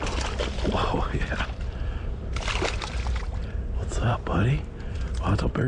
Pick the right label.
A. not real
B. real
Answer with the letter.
A